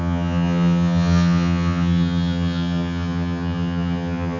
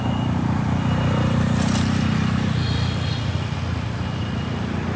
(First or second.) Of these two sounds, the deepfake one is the first